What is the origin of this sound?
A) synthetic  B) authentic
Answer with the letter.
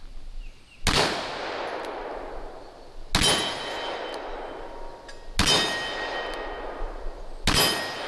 B